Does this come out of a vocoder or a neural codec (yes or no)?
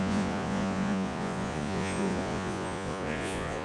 yes